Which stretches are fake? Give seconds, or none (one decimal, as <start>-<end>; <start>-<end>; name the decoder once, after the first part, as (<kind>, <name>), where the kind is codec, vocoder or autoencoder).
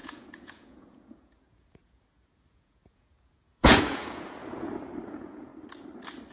0.0-4.4 (vocoder, Vocos); 5.1-5.5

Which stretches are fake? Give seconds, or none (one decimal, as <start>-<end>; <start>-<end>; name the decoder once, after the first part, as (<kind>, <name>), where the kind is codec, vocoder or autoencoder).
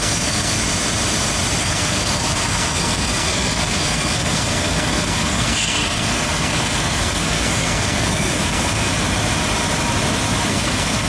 0.0-0.6 (codec, SNAC); 1.6-8.9; 10.5-11.1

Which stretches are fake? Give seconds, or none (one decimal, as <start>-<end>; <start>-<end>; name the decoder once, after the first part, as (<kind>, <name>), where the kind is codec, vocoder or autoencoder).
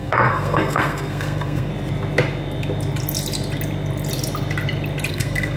0.0-1.7 (codec, SNAC); 5.1-5.6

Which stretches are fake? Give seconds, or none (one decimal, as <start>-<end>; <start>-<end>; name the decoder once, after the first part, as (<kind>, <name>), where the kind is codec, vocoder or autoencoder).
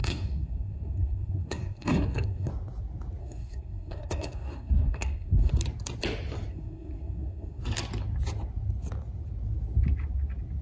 0.0-2.5 (codec, SNAC); 3.2-5.5; 6.5-7.6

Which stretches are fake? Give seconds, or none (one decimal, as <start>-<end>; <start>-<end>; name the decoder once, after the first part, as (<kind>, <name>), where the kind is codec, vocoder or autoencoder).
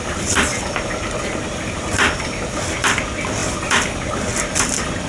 none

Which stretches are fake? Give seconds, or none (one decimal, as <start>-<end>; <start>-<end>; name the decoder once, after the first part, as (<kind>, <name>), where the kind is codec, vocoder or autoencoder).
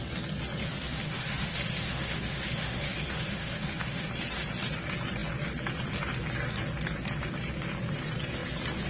0.6-4.1 (autoencoder, DAC-VAE)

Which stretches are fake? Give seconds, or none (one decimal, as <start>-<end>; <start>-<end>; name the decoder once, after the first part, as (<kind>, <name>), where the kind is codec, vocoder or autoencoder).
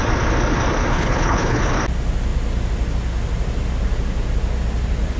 0.9-1.7 (codec, HILCodec)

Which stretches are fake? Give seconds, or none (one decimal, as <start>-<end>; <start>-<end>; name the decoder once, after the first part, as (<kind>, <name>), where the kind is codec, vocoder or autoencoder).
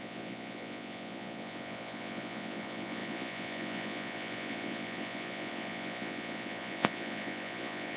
0.0-8.0 (vocoder, Vocos)